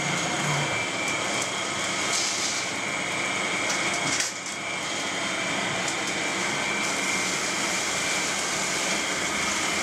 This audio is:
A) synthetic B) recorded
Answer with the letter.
B